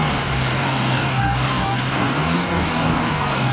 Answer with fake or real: fake